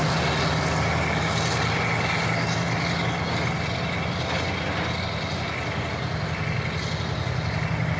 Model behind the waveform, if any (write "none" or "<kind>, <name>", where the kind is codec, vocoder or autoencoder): none